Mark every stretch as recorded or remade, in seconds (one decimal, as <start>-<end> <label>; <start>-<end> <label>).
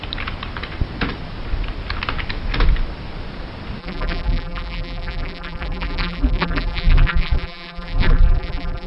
0.0-3.8 recorded; 3.8-8.9 remade